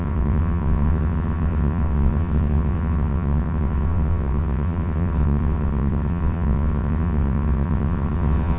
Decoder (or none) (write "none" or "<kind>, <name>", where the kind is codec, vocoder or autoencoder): vocoder, WaveNeXt